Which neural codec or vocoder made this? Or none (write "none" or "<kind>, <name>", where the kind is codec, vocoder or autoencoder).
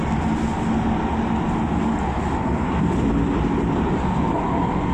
none